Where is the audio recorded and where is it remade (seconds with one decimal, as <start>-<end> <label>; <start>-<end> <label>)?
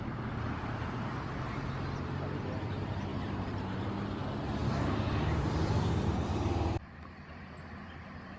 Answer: 0.0-3.1 recorded; 3.1-3.8 remade; 3.8-4.6 recorded; 4.6-8.4 remade